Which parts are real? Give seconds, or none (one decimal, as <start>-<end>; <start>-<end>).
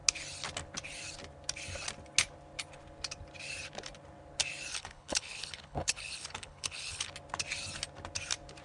0.0-4.7; 7.1-8.6